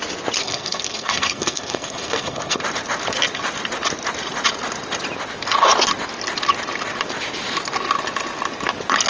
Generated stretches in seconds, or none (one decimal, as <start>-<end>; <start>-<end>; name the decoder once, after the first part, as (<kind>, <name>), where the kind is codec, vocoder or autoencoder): 0.4-2.6 (codec, SNAC)